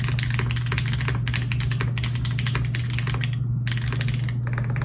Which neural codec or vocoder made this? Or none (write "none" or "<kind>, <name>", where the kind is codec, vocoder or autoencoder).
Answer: none